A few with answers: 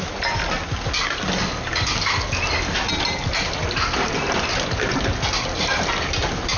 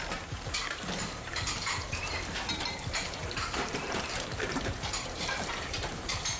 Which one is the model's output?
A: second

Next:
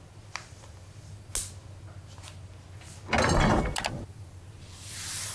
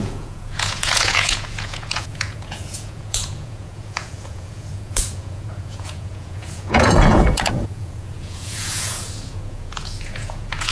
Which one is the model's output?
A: second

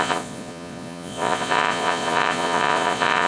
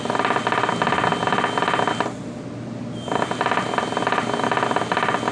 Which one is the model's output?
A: first